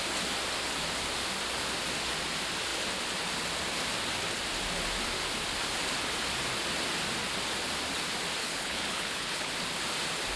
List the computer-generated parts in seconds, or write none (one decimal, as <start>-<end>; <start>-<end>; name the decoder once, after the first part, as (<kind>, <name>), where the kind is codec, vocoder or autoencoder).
8.4-9.5 (codec, HILCodec)